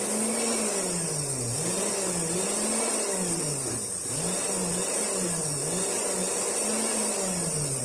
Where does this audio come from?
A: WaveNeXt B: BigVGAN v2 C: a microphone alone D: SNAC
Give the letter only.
C